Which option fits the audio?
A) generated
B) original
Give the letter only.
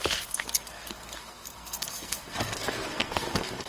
A